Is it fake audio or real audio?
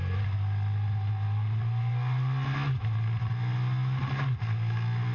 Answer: real